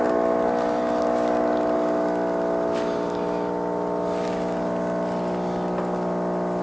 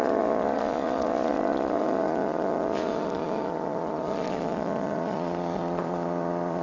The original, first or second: first